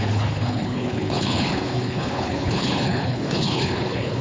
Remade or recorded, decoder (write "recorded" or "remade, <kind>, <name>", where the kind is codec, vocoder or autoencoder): remade, codec, HILCodec